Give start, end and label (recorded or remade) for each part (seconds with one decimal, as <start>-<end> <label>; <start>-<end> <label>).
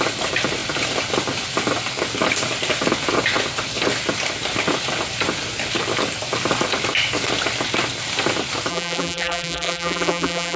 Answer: 0.0-8.7 recorded; 8.7-10.6 remade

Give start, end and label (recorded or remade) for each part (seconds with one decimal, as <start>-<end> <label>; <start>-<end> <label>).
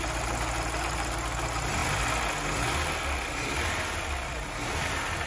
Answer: 0.0-5.3 recorded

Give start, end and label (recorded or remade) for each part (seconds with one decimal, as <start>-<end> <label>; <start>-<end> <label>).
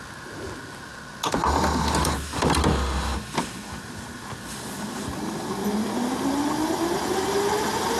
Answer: 0.0-8.0 recorded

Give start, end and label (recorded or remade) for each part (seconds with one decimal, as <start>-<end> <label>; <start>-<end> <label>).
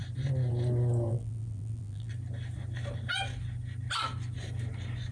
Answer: 0.0-1.1 recorded; 1.1-2.1 remade; 2.1-5.1 recorded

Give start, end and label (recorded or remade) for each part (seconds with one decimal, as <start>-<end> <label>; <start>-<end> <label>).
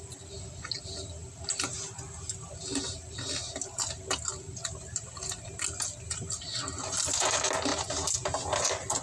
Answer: 0.0-9.0 recorded